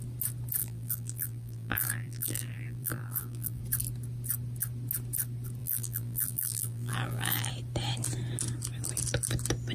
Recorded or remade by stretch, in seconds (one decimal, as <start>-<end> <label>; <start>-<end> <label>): 0.0-0.6 recorded; 0.6-3.6 remade; 3.6-5.6 recorded; 5.6-7.5 remade; 7.5-9.7 recorded

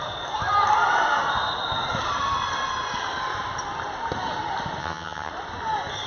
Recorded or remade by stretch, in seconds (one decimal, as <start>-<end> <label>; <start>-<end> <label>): 0.0-4.8 recorded; 4.8-5.3 remade; 5.3-6.1 recorded

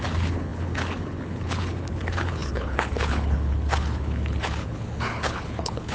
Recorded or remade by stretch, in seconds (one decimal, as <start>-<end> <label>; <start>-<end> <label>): 0.0-5.9 remade

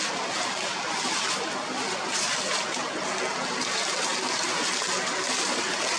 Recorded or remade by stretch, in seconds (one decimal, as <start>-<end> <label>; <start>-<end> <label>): 0.0-6.0 recorded